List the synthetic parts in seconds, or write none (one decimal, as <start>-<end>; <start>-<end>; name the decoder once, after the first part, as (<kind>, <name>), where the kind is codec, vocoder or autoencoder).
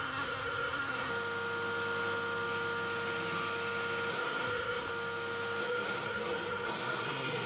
0.0-1.1 (codec, SNAC); 4.1-4.9; 5.6-7.5